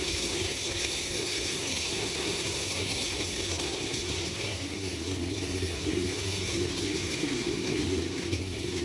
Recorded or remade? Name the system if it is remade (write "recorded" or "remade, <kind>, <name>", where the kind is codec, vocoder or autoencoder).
remade, codec, SNAC